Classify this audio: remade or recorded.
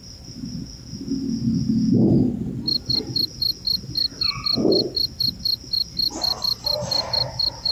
recorded